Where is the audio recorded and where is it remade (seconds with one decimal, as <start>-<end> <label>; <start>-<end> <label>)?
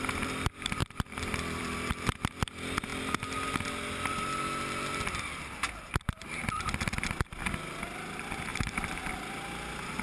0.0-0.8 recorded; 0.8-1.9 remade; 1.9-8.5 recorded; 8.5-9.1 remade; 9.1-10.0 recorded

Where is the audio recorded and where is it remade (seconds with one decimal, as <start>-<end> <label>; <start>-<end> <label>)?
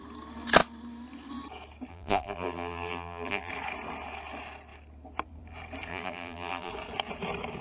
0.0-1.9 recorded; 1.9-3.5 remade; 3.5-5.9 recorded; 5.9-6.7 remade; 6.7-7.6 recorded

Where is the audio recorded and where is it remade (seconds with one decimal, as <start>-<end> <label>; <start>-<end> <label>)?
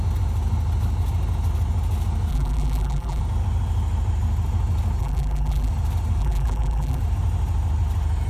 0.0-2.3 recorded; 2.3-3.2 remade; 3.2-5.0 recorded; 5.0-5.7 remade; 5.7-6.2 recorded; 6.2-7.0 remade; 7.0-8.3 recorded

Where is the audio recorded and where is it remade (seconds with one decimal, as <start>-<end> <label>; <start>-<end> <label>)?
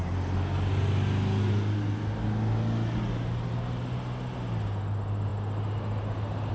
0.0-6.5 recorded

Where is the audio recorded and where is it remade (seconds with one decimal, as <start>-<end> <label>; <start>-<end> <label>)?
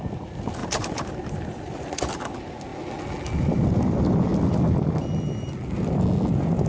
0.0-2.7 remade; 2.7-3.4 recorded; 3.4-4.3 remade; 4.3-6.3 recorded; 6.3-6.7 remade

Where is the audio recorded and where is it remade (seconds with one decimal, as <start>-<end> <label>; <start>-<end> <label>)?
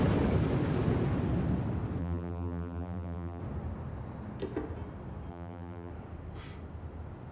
0.0-2.0 recorded; 2.0-3.4 remade; 3.4-5.3 recorded; 5.3-5.9 remade; 5.9-7.3 recorded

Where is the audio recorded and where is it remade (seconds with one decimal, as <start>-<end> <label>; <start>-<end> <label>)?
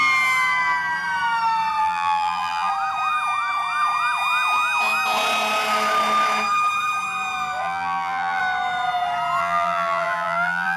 0.0-1.8 recorded; 1.8-2.7 remade; 2.7-7.6 recorded; 7.6-8.4 remade; 8.4-9.4 recorded; 9.4-10.8 remade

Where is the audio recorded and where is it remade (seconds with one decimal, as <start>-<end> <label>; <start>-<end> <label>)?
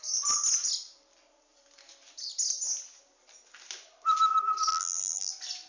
0.0-4.7 recorded; 4.7-5.3 remade; 5.3-5.7 recorded